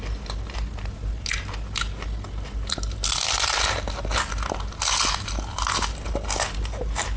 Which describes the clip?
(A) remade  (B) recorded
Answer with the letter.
B